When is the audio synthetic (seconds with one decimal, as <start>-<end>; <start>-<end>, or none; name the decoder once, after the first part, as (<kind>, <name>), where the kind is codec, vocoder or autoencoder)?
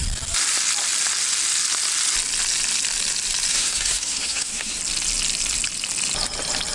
3.5-4.8 (codec, SNAC)